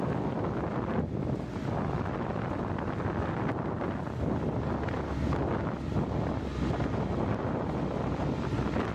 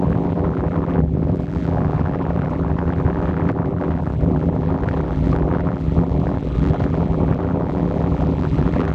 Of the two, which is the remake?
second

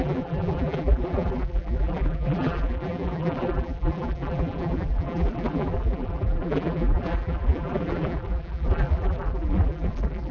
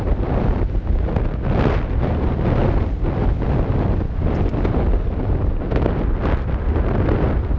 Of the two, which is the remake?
first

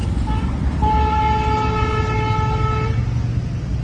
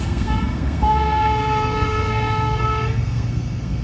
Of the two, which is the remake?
second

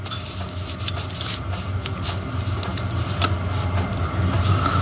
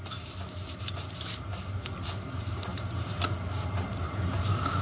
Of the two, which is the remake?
second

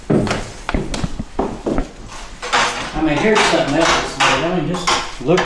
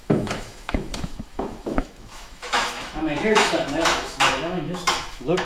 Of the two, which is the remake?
second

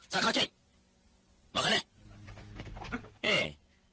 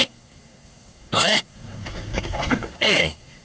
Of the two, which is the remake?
second